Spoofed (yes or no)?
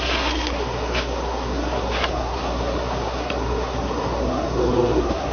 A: yes